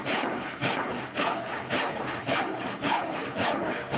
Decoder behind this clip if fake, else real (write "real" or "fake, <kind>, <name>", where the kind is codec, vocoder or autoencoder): fake, codec, HILCodec